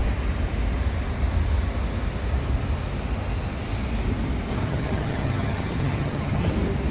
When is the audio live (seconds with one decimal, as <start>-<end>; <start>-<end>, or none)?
0.0-4.5; 6.5-6.9